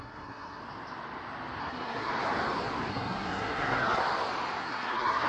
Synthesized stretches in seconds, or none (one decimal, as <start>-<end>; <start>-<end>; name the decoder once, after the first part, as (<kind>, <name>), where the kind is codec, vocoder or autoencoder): 0.0-0.6 (codec, SNAC); 1.6-2.1; 2.9-4.0; 4.6-5.3